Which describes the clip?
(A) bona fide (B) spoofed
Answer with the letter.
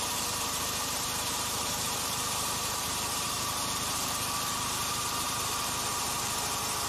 B